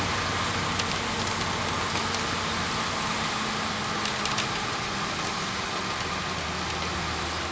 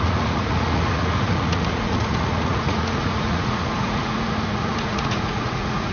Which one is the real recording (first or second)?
first